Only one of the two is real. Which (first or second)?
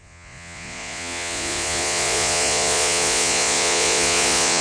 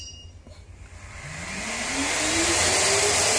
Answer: second